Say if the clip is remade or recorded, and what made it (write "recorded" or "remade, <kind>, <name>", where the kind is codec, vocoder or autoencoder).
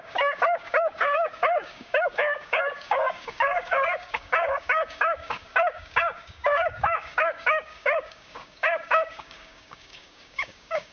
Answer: remade, codec, DAC